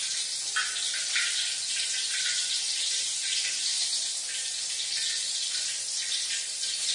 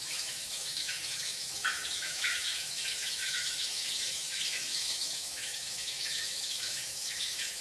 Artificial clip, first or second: second